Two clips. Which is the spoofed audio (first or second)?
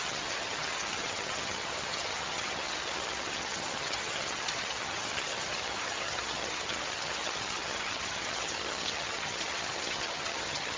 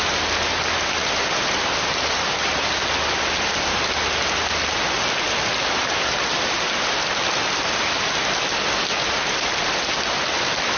first